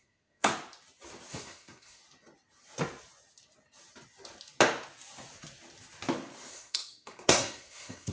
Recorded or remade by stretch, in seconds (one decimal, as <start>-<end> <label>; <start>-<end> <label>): 0.0-0.5 remade; 0.5-1.3 recorded; 1.3-2.0 remade; 2.0-6.5 recorded; 6.5-8.1 remade

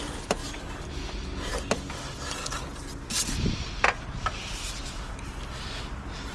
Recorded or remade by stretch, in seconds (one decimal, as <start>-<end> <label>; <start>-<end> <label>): 0.0-6.3 recorded

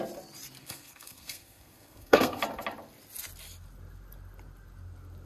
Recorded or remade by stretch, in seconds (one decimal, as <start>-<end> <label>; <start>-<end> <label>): 0.0-0.6 recorded; 0.6-2.4 remade; 2.4-5.3 recorded

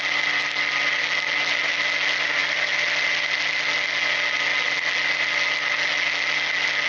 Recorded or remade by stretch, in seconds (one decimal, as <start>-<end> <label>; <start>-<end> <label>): 0.0-6.9 recorded

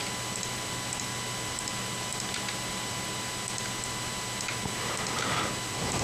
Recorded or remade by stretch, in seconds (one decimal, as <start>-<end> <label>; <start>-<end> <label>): 0.0-6.0 recorded